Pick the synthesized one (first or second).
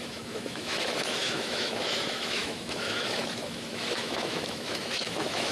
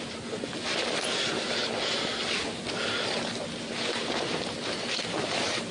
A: first